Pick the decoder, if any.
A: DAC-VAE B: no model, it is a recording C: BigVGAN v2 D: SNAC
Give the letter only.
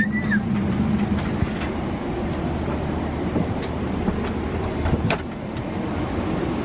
B